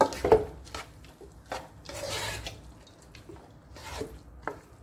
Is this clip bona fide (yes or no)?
yes